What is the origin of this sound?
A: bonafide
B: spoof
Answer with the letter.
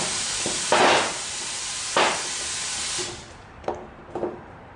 B